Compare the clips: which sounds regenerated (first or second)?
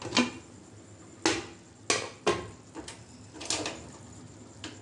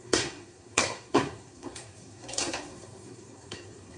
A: second